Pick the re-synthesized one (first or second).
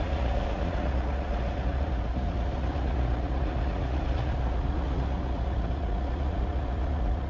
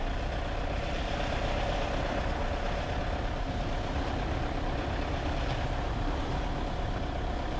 first